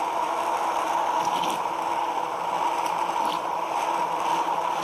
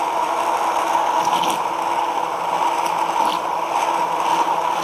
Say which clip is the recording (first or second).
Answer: second